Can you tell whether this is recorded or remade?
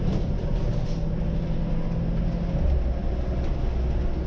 recorded